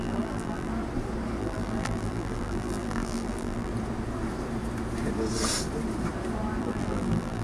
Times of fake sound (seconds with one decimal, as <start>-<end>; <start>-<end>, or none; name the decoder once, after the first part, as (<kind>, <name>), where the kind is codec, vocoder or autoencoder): 0.0-0.7 (vocoder, BigVGAN v2); 1.4-3.7; 6.6-7.4